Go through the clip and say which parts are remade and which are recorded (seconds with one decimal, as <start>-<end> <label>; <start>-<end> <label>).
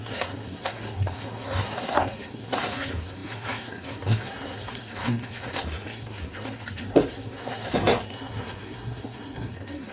0.0-9.9 remade